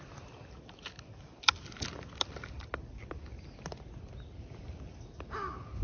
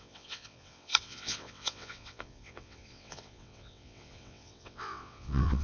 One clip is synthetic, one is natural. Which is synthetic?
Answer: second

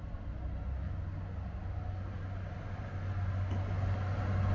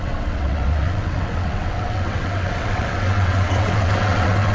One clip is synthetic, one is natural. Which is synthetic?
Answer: second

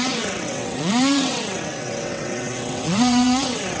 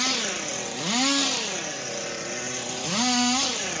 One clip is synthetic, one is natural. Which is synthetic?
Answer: first